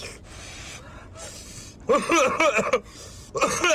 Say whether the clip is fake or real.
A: real